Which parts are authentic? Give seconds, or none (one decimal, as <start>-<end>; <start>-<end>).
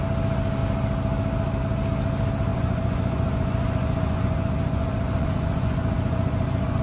0.0-2.5